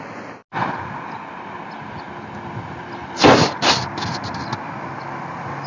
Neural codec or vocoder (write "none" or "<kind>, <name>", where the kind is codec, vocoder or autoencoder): none